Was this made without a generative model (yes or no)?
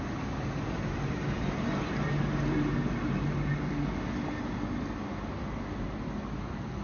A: yes